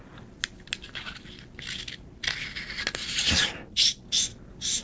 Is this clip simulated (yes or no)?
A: no